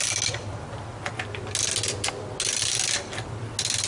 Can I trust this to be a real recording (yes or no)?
yes